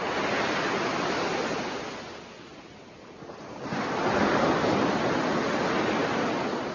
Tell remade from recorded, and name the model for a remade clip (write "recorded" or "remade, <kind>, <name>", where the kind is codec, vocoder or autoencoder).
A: recorded